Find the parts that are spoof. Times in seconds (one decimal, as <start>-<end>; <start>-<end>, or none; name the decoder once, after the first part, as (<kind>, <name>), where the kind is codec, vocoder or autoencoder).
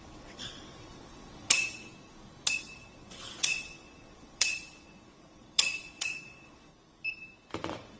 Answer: 0.0-1.9 (vocoder, WaveNeXt); 2.5-6.7; 7.6-8.0